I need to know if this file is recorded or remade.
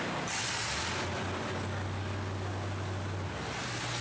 recorded